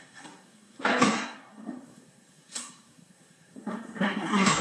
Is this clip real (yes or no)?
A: no